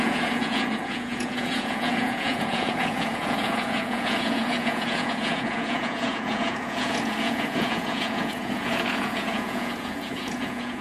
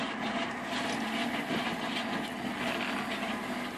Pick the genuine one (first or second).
second